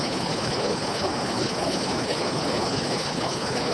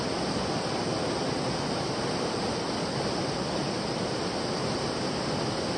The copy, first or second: first